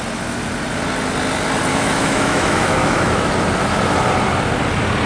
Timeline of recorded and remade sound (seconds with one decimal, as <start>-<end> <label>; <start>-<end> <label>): 0.0-1.7 recorded; 1.7-3.3 remade; 3.3-5.1 recorded